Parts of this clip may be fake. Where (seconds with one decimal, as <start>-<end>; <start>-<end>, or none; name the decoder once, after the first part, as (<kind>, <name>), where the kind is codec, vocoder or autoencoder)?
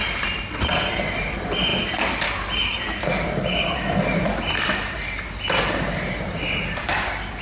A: 0.0-1.7 (vocoder, BigVGAN v2); 5.6-7.4